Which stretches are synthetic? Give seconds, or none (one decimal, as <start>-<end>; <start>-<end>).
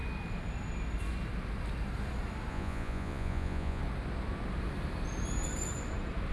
2.5-3.8